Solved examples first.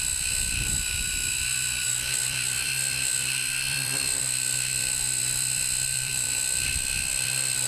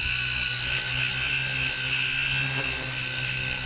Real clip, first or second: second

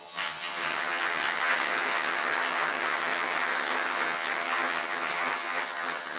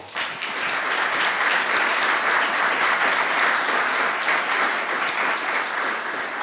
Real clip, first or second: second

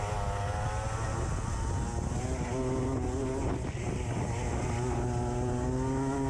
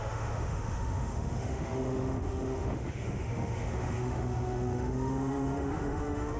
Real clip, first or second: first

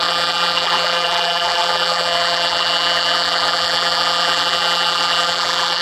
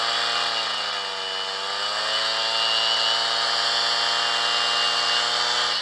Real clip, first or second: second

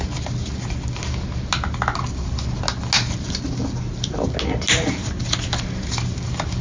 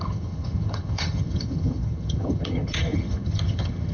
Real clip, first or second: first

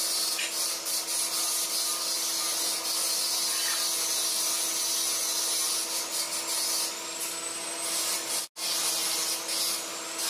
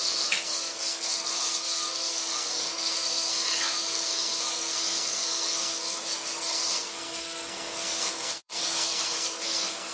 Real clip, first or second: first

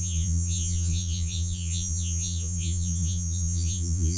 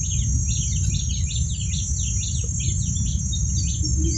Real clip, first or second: second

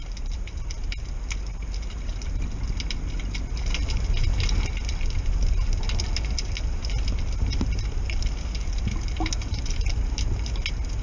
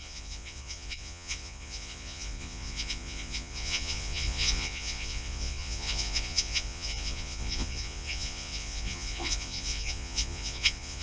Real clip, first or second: first